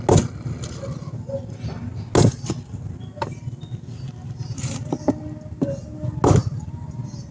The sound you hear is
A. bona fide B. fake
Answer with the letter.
A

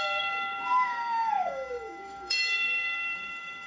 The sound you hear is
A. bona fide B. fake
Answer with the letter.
B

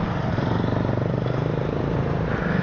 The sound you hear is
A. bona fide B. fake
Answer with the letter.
A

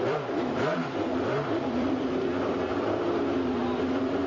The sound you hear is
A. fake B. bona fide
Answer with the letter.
A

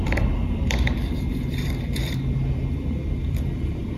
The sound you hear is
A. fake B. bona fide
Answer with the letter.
A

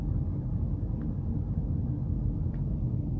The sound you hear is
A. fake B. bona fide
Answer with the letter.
B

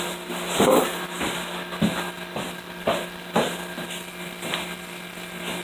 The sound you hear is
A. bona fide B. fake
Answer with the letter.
A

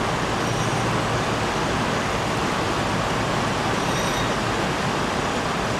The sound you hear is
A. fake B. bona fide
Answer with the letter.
B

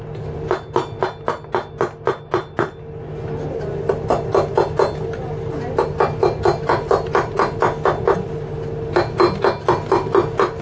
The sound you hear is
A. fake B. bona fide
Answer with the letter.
B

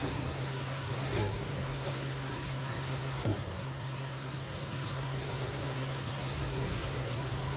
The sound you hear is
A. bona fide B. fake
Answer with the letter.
B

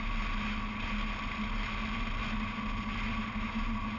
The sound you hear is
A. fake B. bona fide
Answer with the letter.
B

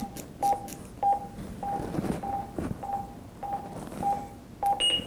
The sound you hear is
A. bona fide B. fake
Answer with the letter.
A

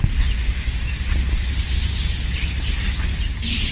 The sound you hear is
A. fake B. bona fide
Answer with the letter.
B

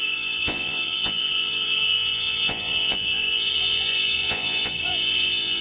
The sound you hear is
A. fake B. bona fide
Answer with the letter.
A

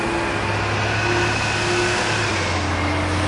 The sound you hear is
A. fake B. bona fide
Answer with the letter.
B